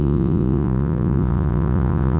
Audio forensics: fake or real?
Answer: fake